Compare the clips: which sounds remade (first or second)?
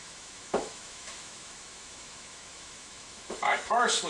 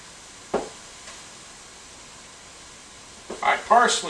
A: first